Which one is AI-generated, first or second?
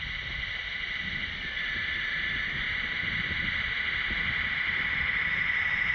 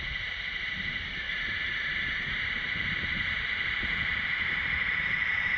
second